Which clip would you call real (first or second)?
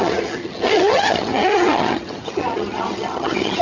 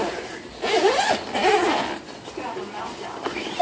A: second